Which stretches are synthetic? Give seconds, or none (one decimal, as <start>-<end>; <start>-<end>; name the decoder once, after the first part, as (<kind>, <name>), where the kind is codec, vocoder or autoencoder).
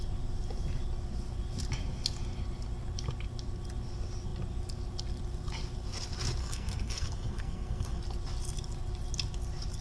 6.4-8.0 (codec, SNAC)